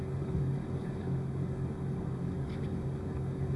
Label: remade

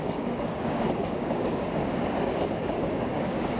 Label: remade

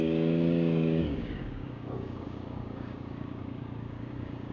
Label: remade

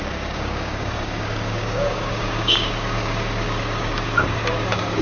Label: remade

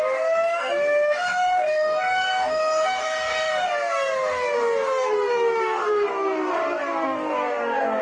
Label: remade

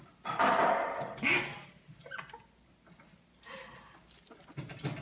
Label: recorded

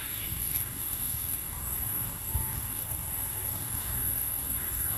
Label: remade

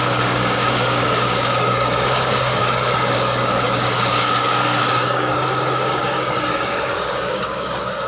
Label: remade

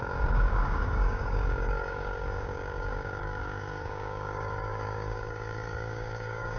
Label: remade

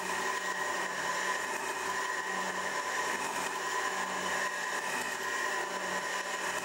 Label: recorded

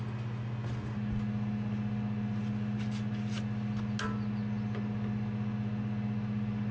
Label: recorded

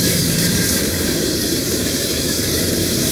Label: remade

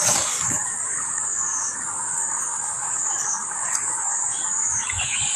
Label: remade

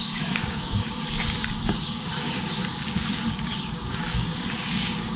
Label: remade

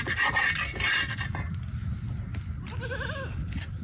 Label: recorded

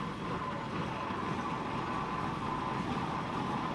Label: recorded